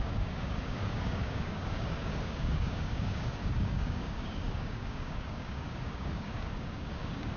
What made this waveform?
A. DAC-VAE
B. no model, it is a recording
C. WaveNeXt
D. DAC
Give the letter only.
D